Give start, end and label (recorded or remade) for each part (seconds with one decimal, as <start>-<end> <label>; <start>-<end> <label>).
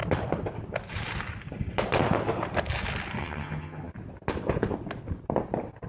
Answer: 0.0-3.2 recorded; 3.2-3.9 remade; 3.9-5.9 recorded